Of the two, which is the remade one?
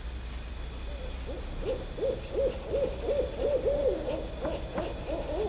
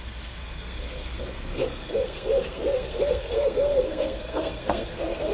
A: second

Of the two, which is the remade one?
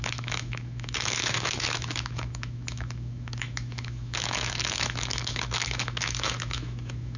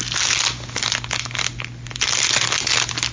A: first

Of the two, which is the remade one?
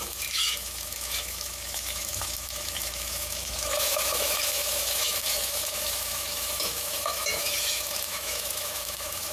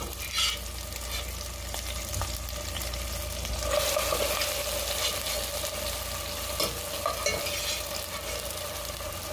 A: first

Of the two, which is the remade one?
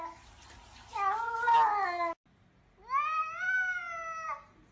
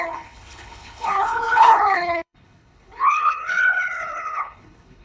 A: second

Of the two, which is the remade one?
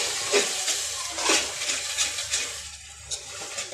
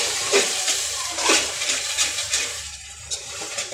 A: second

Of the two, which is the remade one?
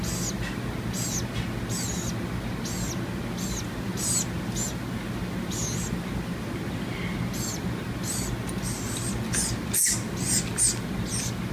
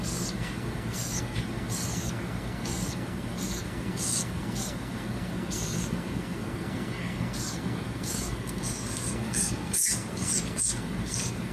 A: second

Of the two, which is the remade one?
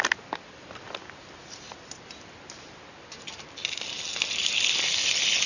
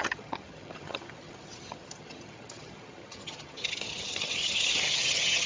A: second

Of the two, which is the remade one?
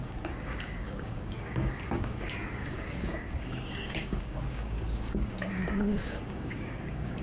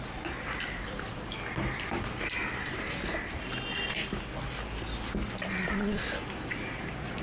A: first